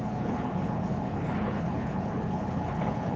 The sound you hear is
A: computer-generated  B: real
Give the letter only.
A